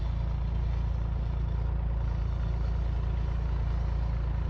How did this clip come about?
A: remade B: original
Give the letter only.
B